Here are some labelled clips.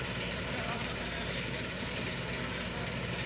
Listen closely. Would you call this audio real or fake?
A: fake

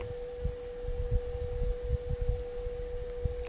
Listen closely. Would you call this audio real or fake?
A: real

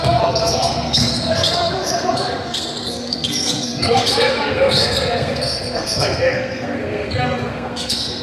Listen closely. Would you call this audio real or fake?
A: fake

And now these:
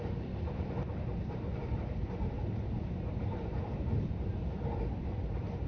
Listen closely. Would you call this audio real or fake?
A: fake